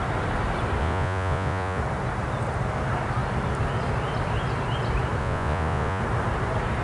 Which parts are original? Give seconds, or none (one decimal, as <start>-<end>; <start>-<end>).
0.0-0.8; 1.8-5.2; 6.0-6.8